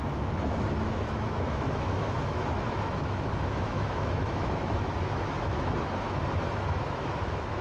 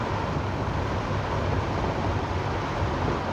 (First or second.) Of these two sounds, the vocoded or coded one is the first